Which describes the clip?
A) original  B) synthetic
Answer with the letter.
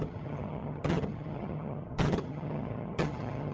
B